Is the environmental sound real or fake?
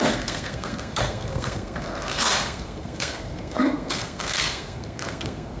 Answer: fake